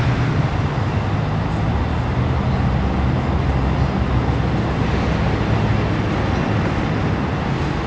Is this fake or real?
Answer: real